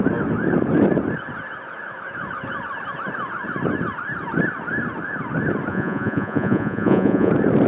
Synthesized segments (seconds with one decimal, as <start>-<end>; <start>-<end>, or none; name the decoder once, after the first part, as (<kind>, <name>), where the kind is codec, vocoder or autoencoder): 5.7-7.3 (vocoder, Vocos)